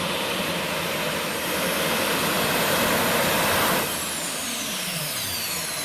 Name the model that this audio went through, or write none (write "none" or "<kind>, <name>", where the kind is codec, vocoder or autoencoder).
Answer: none